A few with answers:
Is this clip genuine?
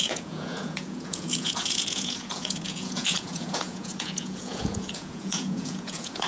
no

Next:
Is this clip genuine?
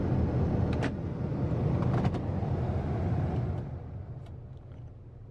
yes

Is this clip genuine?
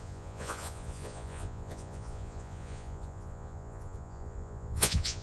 no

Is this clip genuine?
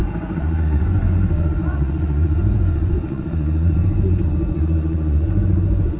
no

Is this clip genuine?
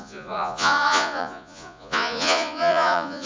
no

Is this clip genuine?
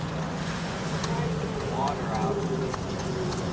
no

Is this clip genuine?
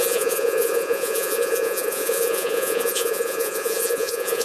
no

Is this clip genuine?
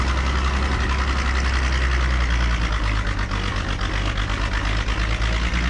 yes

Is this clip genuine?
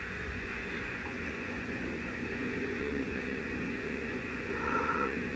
no